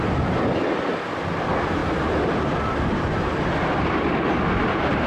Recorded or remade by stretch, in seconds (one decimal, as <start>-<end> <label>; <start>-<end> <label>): 0.0-5.1 remade